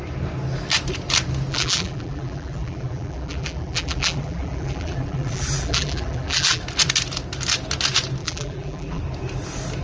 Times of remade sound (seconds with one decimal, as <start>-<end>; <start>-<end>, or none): 1.5-6.6; 8.2-9.0